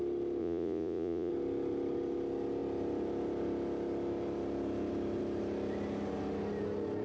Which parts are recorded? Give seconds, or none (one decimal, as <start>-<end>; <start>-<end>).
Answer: 0.0-0.4; 1.3-7.0